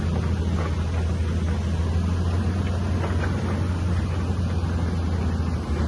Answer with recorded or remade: recorded